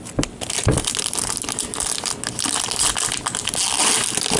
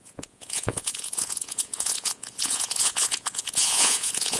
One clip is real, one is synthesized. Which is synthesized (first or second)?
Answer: second